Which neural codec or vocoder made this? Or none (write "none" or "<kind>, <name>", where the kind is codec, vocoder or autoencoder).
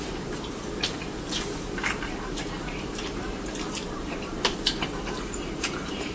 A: vocoder, BigVGAN v2